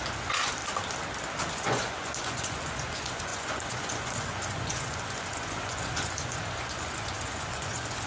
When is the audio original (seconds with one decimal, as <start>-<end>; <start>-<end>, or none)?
0.6-1.5